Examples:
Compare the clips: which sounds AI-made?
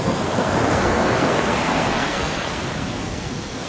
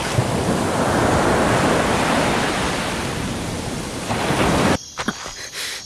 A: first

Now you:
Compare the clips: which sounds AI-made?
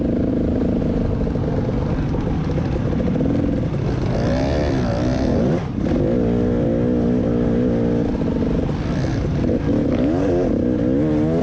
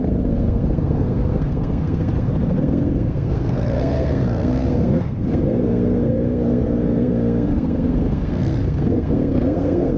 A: second